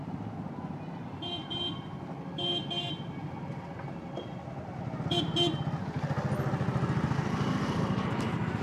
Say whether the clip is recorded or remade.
recorded